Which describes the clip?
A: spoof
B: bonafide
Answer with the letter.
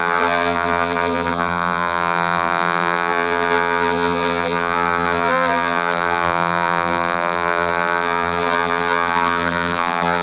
A